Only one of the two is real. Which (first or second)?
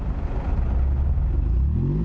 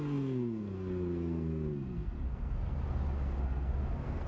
first